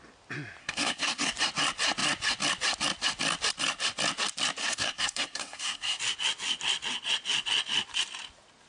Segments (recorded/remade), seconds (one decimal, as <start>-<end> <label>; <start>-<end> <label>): 0.0-0.6 recorded; 0.6-1.3 remade; 1.3-4.6 recorded; 4.6-6.0 remade; 6.0-8.7 recorded